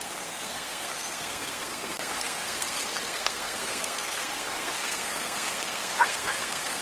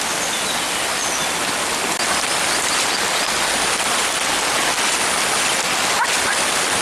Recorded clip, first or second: second